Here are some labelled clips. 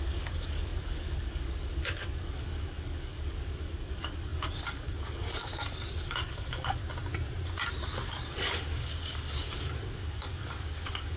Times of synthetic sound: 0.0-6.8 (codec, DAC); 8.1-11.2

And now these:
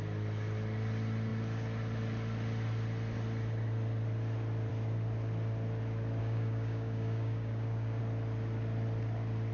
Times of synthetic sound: 6.2-8.0 (codec, DAC)